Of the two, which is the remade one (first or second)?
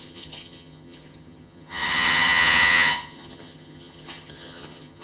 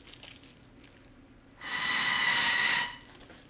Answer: first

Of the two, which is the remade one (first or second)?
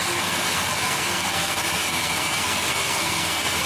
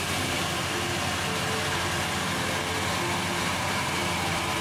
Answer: first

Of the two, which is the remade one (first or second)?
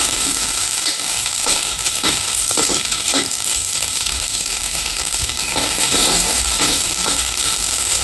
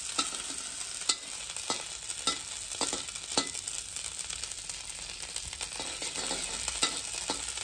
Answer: first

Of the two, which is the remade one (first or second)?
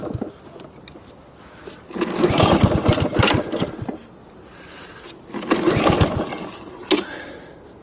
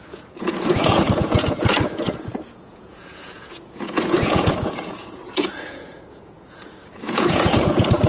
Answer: second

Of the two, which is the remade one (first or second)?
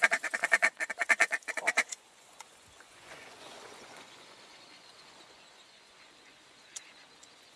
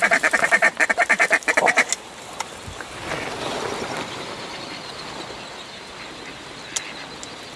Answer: first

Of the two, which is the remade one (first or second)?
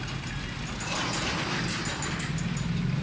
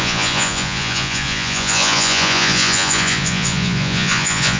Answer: second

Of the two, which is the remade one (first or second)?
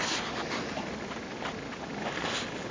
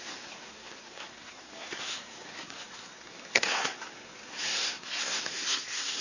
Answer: second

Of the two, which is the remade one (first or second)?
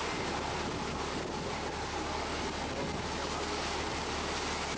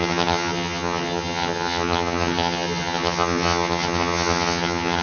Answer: second